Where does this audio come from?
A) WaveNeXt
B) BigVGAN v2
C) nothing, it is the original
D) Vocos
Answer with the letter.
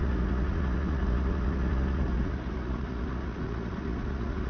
D